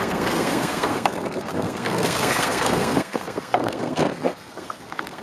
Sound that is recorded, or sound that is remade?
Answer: remade